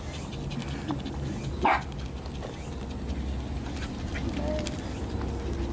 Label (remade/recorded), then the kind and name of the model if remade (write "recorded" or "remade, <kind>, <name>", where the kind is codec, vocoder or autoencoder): recorded